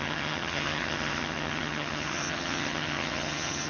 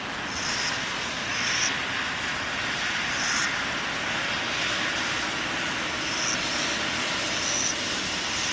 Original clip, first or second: second